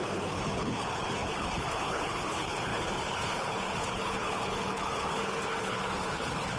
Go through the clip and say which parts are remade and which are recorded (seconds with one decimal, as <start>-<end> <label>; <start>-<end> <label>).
0.0-6.6 remade